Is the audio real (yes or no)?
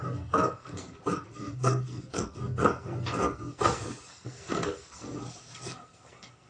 no